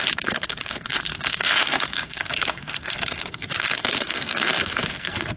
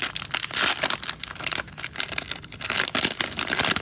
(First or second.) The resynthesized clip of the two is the first